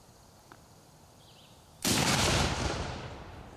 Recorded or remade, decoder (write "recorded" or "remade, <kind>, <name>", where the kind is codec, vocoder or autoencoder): recorded